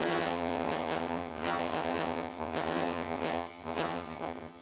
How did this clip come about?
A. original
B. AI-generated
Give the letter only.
B